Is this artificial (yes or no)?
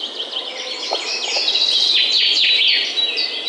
no